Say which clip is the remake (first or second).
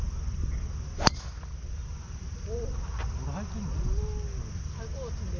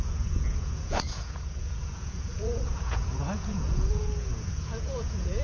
second